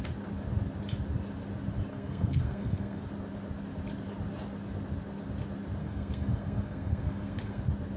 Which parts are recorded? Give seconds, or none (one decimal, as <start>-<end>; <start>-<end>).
0.0-1.9; 3.0-5.8; 7.6-8.0